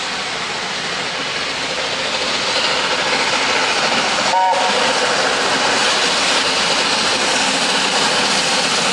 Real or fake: real